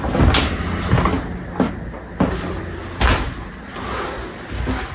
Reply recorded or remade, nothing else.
recorded